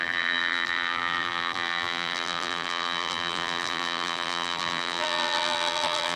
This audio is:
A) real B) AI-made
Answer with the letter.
B